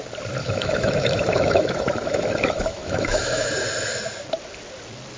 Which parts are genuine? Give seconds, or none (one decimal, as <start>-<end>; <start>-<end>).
0.0-0.4; 3.5-5.2